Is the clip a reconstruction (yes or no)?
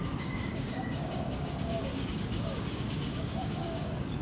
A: yes